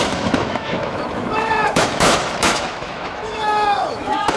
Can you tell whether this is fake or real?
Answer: fake